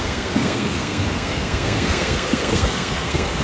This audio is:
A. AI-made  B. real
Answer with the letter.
A